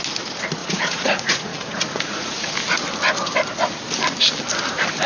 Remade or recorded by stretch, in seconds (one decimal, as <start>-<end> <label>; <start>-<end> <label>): 0.0-0.6 recorded; 0.6-2.5 remade; 2.5-5.1 recorded